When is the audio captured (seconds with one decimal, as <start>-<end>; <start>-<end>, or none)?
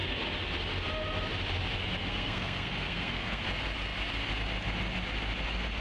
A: 0.0-2.0; 3.4-5.8